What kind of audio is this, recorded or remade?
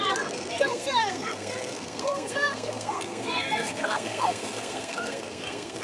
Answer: remade